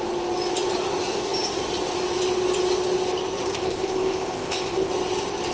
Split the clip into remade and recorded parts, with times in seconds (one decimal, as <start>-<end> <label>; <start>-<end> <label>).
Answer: 0.0-3.5 recorded; 3.5-4.9 remade; 4.9-5.5 recorded